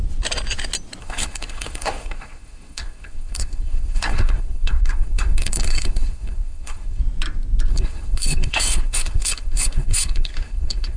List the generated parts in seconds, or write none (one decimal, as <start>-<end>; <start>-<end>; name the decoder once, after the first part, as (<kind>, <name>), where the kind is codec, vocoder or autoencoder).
1.0-7.0 (codec, SNAC); 7.7-11.0